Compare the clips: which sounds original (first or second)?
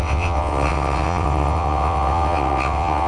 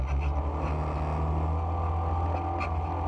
second